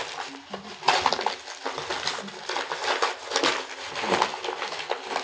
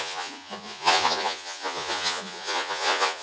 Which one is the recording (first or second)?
first